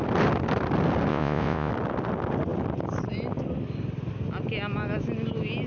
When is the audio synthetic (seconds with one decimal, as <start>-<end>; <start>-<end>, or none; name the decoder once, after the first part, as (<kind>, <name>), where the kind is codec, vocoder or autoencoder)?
1.1-1.7 (vocoder, Vocos)